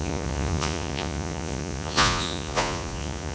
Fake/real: fake